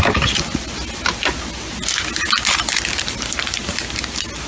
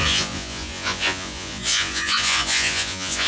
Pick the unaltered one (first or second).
first